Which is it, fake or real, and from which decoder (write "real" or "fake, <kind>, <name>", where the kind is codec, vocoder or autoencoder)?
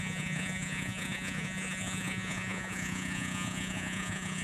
fake, vocoder, Vocos